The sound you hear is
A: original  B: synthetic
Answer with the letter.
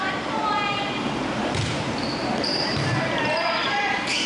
B